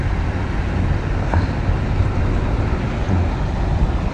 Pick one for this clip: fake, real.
real